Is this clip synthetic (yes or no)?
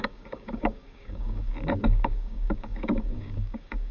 yes